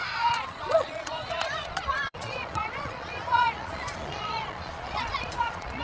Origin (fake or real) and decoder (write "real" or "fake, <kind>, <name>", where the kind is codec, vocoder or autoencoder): fake, vocoder, Vocos